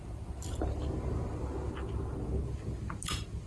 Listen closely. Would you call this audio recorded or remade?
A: recorded